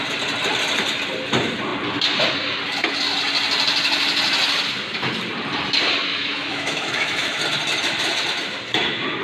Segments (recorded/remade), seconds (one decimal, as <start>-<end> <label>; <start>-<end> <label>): 0.0-6.1 recorded; 6.1-7.4 remade; 7.4-9.2 recorded